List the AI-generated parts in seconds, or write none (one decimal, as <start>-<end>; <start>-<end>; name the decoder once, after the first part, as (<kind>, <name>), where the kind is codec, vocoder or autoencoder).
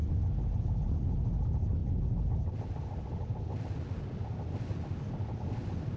none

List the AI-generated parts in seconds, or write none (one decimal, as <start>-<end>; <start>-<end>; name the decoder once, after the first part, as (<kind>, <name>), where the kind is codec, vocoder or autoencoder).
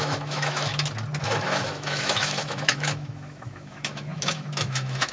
0.0-0.7 (autoencoder, DAC-VAE); 1.2-5.1